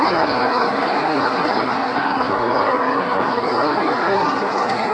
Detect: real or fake fake